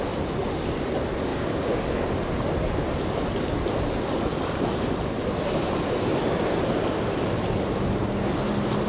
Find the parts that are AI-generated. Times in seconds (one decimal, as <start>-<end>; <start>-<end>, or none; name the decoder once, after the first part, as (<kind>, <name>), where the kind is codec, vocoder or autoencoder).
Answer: none